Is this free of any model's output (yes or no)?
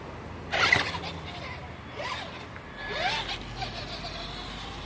yes